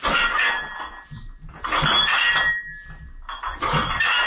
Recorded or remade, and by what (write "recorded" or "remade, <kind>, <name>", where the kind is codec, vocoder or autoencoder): recorded